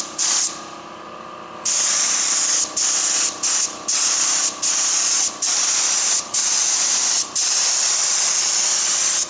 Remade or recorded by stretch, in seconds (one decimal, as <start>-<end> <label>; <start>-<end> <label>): 0.0-6.4 recorded; 6.4-7.1 remade; 7.1-9.3 recorded